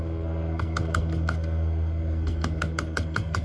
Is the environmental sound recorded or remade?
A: remade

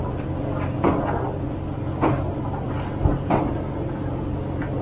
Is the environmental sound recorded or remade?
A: recorded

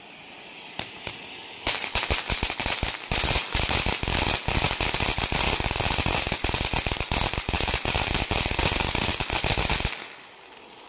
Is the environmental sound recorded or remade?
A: recorded